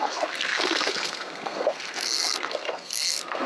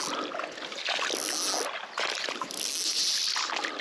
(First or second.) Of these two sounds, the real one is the second